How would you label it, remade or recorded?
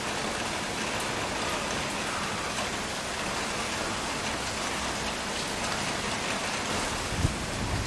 recorded